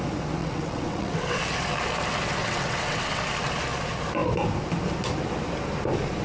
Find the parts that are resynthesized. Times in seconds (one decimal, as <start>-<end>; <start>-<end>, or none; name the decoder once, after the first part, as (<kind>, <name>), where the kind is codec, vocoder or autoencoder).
0.4-1.4 (vocoder, WaveNeXt); 2.4-3.2